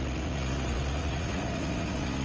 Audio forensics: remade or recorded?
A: remade